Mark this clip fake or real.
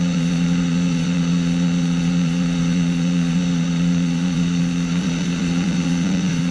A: fake